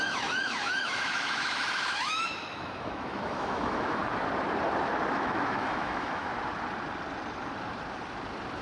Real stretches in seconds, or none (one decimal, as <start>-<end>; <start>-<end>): 4.0-5.1; 6.3-8.6